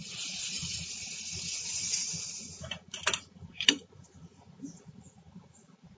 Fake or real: fake